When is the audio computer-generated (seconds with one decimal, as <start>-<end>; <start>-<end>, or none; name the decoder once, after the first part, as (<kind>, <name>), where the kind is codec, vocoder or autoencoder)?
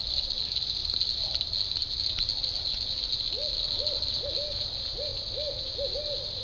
none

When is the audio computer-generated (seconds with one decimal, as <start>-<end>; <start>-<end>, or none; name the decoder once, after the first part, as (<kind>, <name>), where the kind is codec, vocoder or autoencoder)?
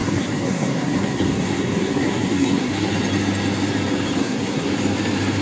0.0-2.9 (codec, SNAC); 4.2-4.7